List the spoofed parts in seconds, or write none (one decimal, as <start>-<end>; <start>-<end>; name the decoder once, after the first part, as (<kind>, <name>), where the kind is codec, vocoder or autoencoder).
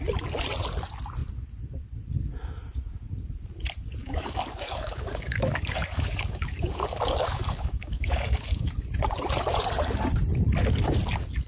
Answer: 4.0-8.7 (codec, DAC)